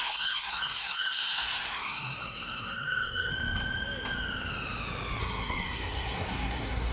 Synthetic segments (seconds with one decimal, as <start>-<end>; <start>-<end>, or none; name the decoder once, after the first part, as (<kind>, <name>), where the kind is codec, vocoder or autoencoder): 0.0-3.3 (codec, SNAC); 5.2-6.9